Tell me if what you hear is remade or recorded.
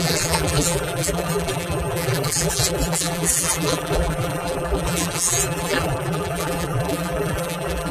remade